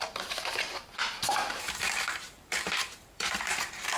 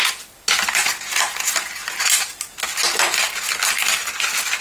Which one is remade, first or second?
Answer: first